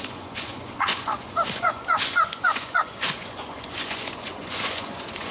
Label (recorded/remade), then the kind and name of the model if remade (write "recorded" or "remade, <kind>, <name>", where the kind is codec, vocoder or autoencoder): remade, vocoder, Vocos